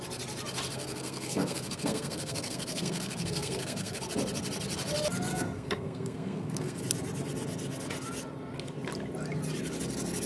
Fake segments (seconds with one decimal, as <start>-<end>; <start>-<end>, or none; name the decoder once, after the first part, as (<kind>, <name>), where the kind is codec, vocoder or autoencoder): 0.7-4.0 (codec, SNAC); 5.3-6.8